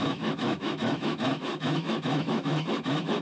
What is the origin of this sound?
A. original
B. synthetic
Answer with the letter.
B